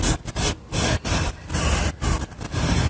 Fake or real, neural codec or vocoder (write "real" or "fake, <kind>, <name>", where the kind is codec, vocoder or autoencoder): real